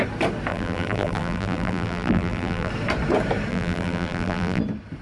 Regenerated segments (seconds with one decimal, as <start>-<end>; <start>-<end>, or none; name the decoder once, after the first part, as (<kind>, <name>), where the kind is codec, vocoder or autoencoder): 0.5-2.7 (vocoder, BigVGAN v2); 3.5-4.6